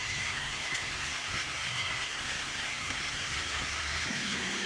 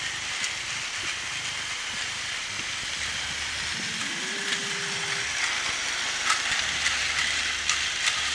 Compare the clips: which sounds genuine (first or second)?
second